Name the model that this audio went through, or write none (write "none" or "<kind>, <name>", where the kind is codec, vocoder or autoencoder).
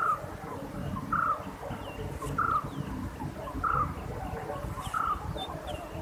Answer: none